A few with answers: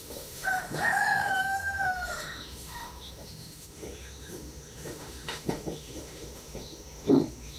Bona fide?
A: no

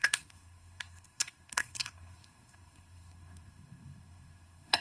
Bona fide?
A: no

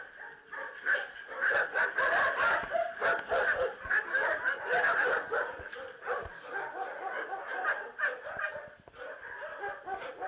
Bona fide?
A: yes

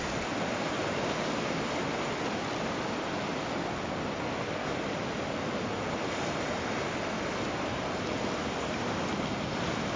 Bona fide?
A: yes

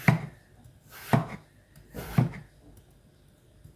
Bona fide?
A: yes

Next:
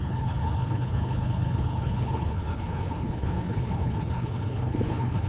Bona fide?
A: no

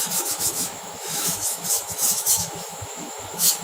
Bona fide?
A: no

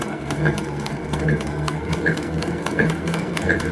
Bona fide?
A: no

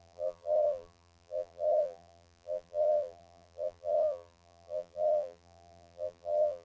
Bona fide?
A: no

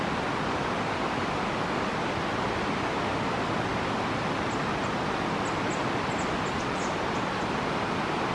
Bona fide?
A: yes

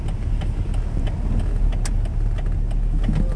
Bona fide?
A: yes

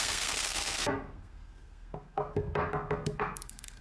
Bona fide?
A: no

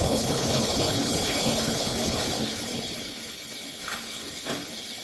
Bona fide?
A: no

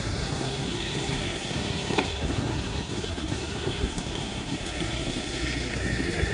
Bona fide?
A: no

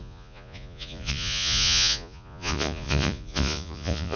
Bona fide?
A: no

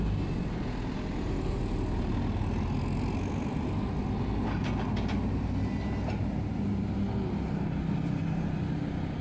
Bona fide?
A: yes